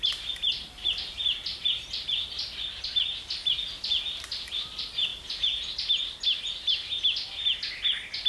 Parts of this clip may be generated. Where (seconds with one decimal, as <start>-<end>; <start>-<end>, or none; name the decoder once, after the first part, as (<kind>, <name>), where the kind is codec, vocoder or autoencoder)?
none